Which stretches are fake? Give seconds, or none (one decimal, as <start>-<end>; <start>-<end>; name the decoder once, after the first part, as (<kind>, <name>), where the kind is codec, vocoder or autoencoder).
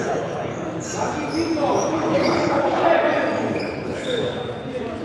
0.0-0.5 (codec, HILCodec); 1.9-2.8; 3.6-4.4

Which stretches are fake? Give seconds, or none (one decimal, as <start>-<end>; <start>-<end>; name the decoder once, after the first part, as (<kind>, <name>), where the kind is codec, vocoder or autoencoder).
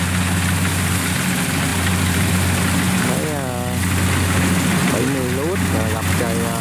1.7-2.3 (vocoder, BigVGAN v2)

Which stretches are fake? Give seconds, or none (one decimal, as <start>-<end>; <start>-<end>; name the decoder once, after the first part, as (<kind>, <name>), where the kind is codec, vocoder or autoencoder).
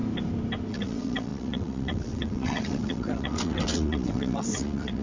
0.7-5.0 (vocoder, WaveNeXt)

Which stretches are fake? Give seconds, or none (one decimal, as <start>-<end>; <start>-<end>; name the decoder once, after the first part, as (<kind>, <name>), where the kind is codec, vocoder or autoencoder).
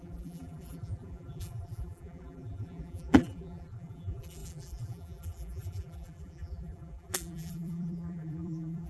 0.0-8.9 (vocoder, BigVGAN v2)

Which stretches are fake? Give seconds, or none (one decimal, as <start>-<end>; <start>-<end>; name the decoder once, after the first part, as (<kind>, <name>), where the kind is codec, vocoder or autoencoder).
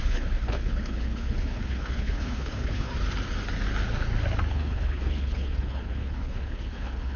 0.0-2.9 (codec, HILCodec); 4.5-7.2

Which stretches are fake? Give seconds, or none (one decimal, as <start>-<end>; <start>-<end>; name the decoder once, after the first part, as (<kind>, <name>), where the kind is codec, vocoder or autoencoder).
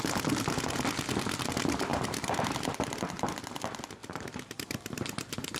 1.9-3.0 (vocoder, BigVGAN v2); 4.0-5.6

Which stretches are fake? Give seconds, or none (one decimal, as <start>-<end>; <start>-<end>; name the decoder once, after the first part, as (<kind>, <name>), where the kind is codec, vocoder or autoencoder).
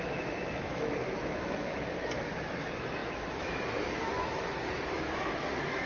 0.0-5.9 (autoencoder, DAC-VAE)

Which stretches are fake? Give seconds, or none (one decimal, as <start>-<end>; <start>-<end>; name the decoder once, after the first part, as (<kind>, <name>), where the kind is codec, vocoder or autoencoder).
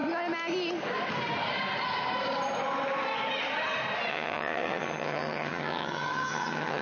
4.1-6.8 (vocoder, HiFi-GAN)